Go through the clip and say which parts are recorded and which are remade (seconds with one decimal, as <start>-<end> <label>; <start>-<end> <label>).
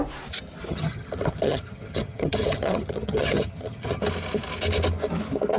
0.0-0.7 recorded; 0.7-4.0 remade; 4.0-5.6 recorded